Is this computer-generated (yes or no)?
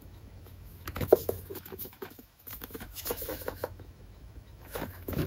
yes